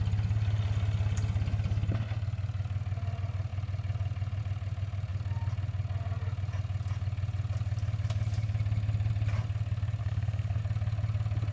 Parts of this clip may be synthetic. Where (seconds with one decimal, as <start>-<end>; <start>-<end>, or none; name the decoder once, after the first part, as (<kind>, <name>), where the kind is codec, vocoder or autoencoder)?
10.0-10.6 (codec, SNAC)